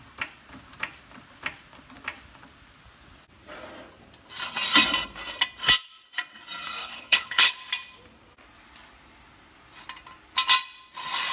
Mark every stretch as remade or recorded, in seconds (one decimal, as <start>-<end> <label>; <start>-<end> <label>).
0.0-6.8 recorded; 6.8-7.5 remade; 7.5-11.3 recorded